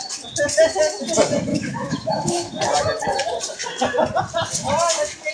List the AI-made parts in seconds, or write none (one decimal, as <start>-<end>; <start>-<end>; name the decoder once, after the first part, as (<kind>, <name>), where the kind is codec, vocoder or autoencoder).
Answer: 1.5-2.5 (autoencoder, DAC-VAE)